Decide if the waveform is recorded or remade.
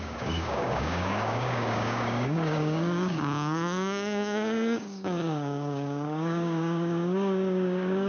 remade